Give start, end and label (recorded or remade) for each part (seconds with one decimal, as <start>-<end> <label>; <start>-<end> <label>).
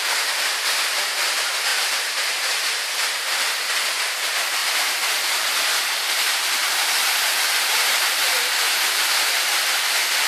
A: 0.0-1.7 recorded; 1.7-3.1 remade; 3.1-4.6 recorded; 4.6-9.2 remade; 9.2-10.3 recorded